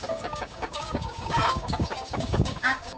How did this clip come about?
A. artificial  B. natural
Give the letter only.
A